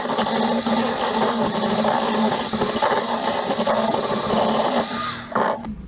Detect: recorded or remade recorded